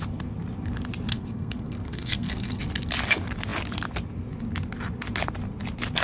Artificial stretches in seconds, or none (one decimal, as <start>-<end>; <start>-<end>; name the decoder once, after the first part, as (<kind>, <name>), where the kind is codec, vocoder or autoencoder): 1.1-2.6 (codec, SNAC)